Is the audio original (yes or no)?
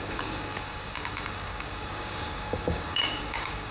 no